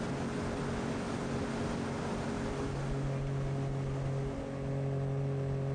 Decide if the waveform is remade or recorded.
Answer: recorded